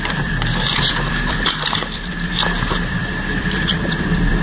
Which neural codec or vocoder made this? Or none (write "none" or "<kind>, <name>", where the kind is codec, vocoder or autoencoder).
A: vocoder, BigVGAN v2